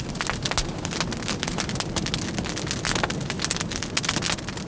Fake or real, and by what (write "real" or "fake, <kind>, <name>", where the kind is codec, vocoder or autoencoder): real